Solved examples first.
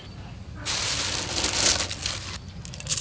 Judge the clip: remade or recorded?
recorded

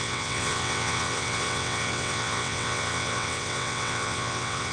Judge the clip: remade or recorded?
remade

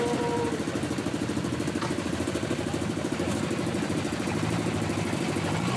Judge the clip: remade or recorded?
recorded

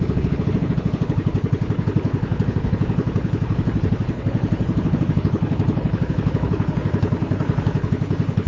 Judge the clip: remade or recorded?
remade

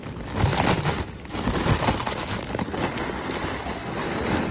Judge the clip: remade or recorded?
recorded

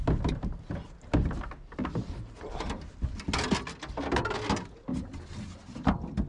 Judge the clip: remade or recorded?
recorded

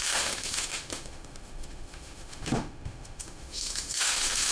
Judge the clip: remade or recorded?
remade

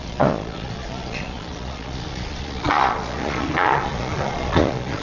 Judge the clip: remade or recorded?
remade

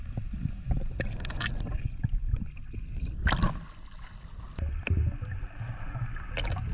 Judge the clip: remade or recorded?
recorded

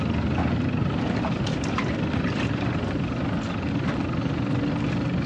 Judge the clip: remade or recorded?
recorded